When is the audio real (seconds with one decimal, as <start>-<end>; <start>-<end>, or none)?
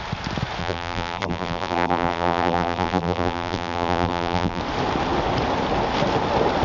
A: 0.0-0.6; 4.6-6.6